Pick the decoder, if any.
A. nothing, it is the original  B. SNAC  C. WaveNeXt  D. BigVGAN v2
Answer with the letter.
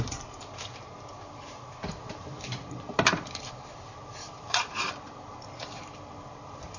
D